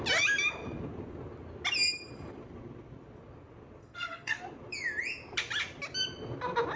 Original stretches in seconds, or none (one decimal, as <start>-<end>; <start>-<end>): 0.0-3.8; 4.4-6.8